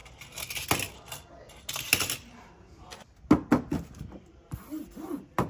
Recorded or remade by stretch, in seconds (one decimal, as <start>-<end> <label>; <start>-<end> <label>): 0.0-3.5 recorded; 3.5-4.5 remade; 4.5-5.5 recorded